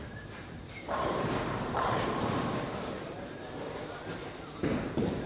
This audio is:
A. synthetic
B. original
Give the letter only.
A